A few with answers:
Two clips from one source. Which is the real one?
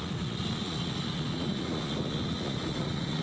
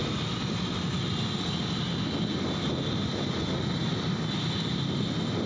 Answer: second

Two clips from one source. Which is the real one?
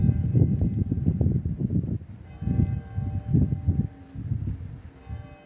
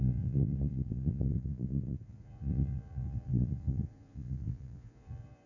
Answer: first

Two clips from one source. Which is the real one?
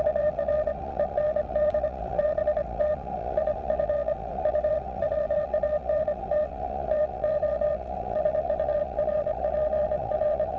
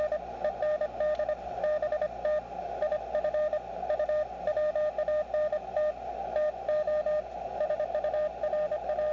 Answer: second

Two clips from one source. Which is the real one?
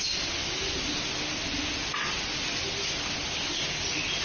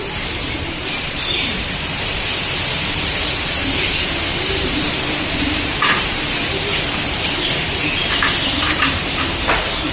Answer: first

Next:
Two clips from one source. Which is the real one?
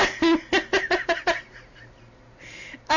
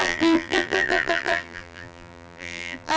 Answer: first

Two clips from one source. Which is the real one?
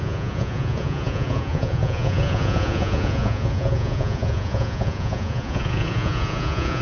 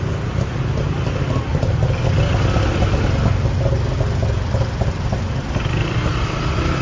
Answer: second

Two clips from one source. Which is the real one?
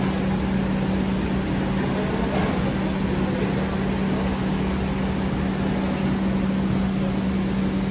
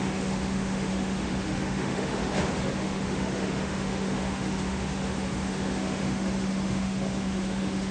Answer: first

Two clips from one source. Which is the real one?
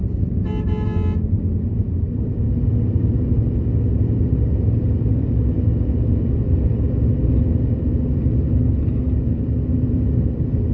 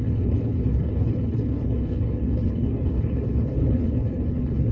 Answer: first